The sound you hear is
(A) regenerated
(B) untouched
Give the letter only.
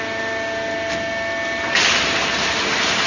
B